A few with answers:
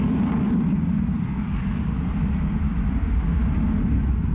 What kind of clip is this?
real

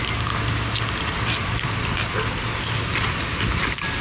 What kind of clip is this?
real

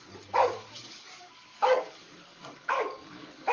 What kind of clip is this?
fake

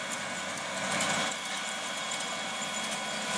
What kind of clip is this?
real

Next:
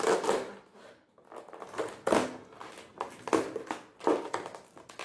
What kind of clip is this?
real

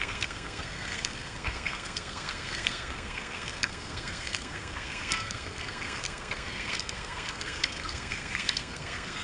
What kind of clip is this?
fake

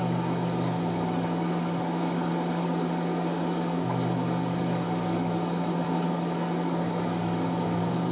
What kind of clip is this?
fake